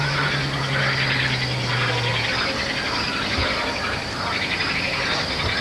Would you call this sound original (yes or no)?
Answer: yes